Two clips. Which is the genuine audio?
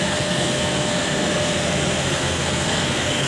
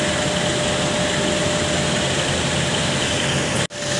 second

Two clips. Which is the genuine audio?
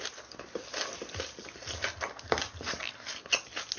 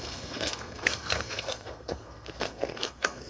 first